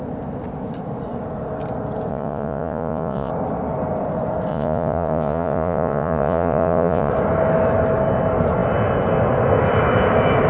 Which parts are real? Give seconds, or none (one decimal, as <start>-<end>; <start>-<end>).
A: 0.0-2.1; 3.3-4.5; 7.1-10.5